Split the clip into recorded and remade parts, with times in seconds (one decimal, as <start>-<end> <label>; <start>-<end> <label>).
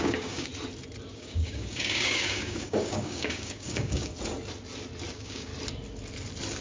0.0-0.5 remade; 0.5-1.1 recorded; 1.1-4.1 remade; 4.1-5.1 recorded; 5.1-5.5 remade; 5.5-6.6 recorded